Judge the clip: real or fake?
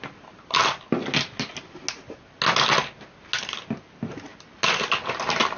real